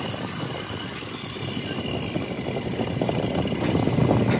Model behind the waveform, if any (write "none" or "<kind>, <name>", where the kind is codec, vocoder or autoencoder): none